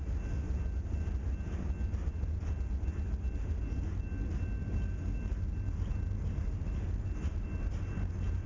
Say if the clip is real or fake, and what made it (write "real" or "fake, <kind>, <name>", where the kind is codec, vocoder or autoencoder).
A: real